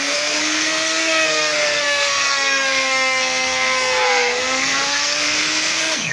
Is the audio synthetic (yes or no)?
yes